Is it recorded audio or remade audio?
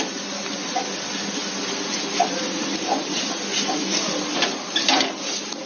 recorded